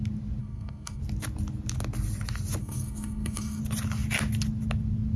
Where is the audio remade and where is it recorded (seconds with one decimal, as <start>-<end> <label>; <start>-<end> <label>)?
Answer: 0.0-0.4 recorded; 0.4-1.0 remade; 1.0-2.6 recorded; 2.6-3.6 remade; 3.6-5.2 recorded